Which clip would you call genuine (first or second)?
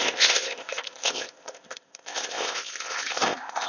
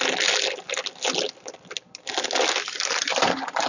second